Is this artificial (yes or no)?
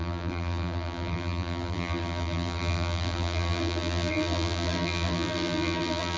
yes